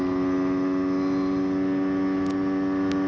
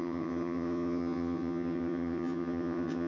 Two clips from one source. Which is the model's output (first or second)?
second